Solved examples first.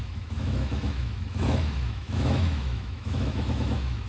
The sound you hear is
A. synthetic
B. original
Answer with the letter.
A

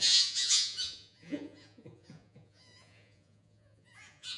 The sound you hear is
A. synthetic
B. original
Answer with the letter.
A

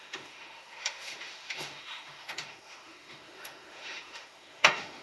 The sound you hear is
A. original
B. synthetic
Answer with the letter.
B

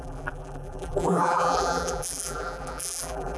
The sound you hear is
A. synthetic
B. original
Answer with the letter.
A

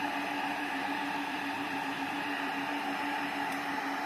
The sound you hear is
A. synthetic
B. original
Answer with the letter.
A